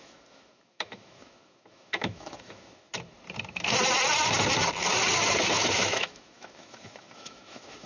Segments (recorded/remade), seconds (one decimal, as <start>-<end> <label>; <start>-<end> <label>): 0.0-2.9 remade; 2.9-5.4 recorded; 5.4-7.9 remade